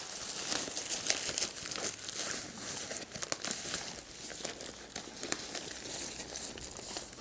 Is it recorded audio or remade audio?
recorded